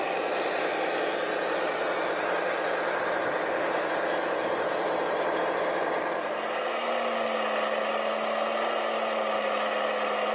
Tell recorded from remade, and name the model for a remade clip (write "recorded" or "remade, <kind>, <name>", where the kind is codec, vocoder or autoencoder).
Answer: recorded